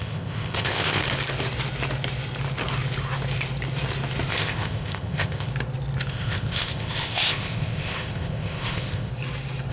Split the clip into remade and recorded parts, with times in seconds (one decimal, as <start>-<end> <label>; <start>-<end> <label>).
0.0-1.0 remade; 1.0-4.3 recorded; 4.3-5.5 remade; 5.5-6.1 recorded; 6.1-9.1 remade; 9.1-9.7 recorded